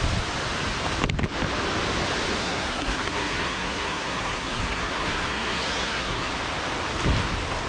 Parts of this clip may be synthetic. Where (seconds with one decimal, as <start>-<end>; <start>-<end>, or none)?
2.4-6.3